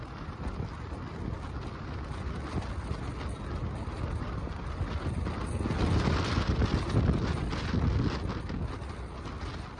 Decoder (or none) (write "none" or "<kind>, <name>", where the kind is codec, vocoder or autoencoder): none